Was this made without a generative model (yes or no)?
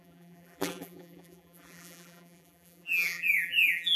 no